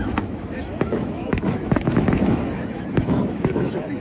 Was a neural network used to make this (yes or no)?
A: yes